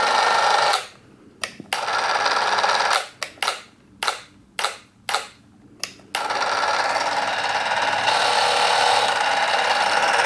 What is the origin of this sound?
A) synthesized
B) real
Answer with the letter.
B